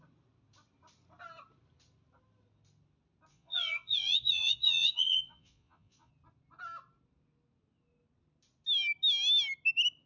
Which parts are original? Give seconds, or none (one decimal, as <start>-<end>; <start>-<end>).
0.0-3.3; 6.1-10.1